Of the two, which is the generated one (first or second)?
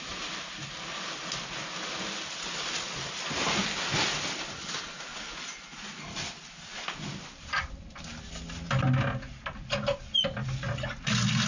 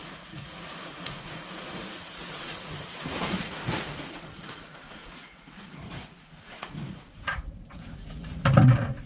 second